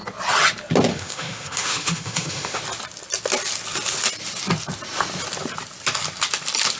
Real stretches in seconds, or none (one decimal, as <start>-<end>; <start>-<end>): 0.0-0.9; 2.6-6.8